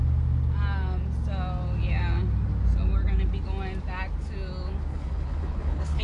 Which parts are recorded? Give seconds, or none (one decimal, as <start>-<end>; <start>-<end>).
0.0-4.9